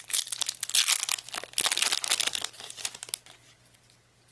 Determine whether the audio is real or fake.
real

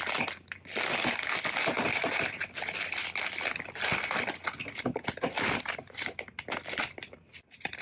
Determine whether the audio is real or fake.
real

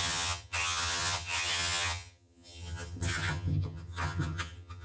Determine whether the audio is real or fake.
fake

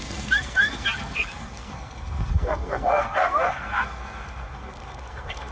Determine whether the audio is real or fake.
fake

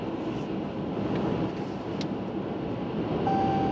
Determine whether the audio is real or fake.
real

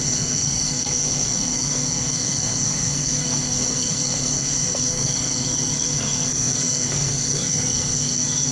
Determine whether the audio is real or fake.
fake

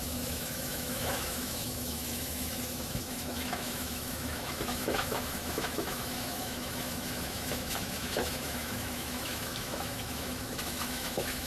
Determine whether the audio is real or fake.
fake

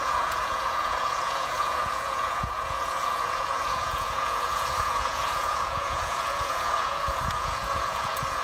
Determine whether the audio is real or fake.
fake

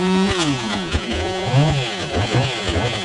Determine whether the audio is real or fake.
fake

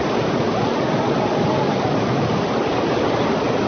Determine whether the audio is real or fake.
real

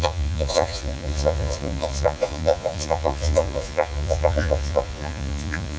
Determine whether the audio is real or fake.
fake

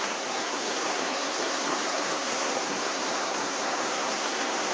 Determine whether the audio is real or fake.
fake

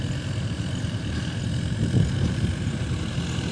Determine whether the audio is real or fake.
real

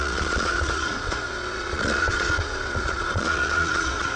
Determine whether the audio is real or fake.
fake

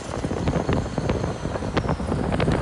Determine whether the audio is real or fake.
real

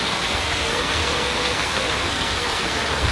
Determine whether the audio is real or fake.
fake